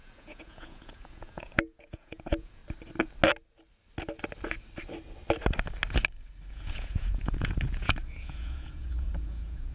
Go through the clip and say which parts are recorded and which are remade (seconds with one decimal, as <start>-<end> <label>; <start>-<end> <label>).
0.0-2.6 remade; 2.6-6.5 recorded; 6.5-9.7 remade